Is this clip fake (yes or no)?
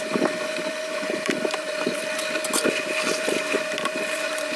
yes